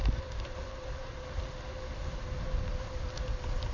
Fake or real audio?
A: real